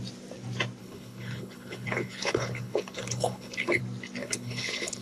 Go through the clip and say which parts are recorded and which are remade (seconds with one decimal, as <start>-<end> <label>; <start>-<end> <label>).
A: 0.0-0.8 recorded; 0.8-3.8 remade; 3.8-4.2 recorded; 4.2-5.0 remade